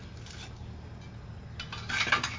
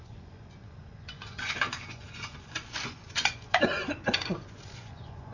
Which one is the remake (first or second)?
second